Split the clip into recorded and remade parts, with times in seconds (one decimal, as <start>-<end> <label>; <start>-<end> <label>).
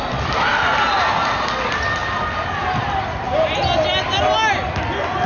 0.0-5.3 recorded